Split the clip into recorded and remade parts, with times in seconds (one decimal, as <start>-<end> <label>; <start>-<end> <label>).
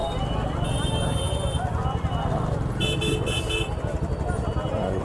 0.0-5.0 recorded